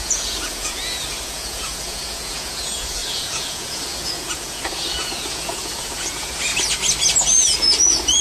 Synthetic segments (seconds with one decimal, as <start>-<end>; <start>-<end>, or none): 0.0-6.5; 7.2-8.2